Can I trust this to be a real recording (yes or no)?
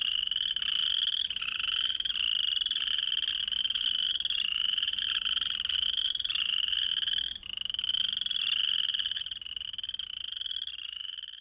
yes